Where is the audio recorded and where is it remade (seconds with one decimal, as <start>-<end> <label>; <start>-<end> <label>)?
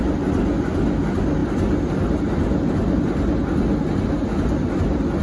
0.0-5.2 recorded